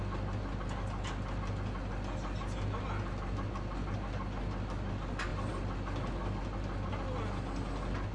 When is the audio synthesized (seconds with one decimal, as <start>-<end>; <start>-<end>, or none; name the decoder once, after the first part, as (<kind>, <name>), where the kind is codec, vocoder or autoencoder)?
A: none